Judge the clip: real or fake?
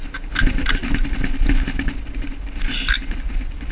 real